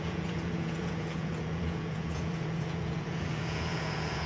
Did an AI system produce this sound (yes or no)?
yes